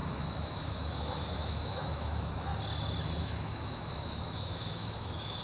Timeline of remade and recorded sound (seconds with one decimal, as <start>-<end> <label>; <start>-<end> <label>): 0.0-2.5 remade; 2.5-3.2 recorded; 3.2-5.4 remade